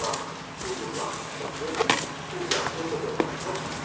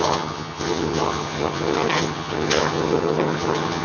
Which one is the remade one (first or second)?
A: second